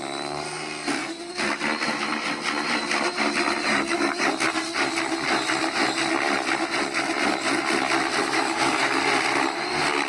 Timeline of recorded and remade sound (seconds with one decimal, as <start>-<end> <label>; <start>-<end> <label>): 0.0-3.6 recorded; 3.6-4.3 remade; 4.3-8.2 recorded; 8.2-9.0 remade; 9.0-10.1 recorded